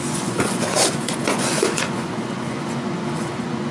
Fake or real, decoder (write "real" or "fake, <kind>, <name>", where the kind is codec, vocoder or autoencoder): fake, vocoder, Vocos